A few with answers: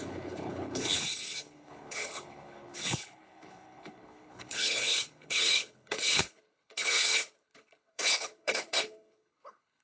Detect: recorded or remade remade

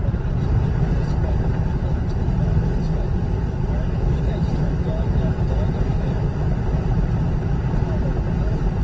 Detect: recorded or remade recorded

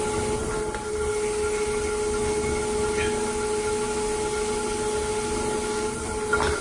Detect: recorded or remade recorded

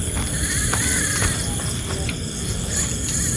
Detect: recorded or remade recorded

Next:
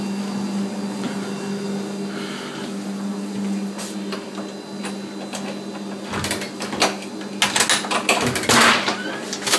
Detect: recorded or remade recorded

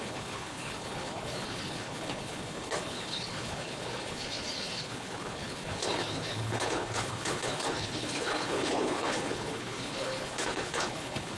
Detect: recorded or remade remade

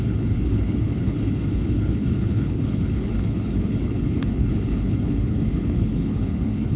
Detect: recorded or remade remade